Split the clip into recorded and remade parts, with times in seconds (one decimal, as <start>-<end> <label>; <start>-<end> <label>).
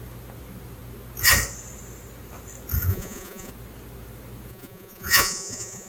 0.0-2.9 recorded; 2.9-3.5 remade; 3.5-4.5 recorded; 4.5-5.9 remade